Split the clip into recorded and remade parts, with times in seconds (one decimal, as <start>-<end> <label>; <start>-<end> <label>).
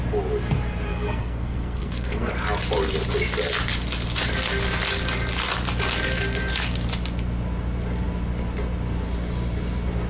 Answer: 0.0-0.9 recorded; 0.9-2.3 remade; 2.3-10.1 recorded